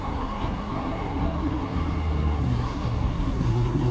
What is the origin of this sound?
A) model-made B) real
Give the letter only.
A